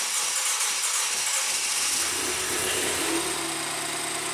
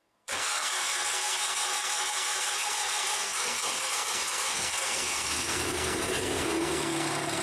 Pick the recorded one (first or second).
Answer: first